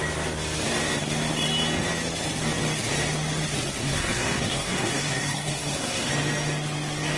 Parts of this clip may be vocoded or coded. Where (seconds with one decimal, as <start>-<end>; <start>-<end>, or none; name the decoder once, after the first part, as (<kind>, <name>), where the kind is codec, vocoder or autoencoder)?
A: 3.8-6.1 (codec, SNAC)